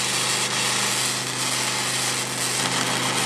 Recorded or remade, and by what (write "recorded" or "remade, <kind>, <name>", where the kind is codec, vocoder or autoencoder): recorded